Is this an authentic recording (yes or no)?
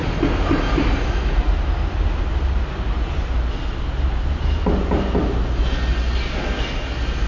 yes